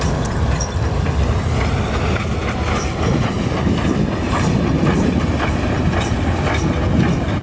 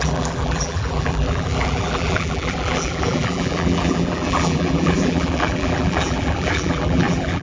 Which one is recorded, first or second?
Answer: first